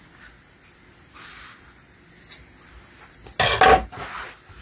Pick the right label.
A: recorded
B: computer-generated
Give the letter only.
A